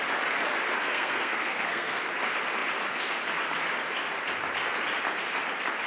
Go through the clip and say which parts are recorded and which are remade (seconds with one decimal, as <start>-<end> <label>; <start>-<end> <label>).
0.0-0.8 recorded; 0.8-2.0 remade; 2.0-5.9 recorded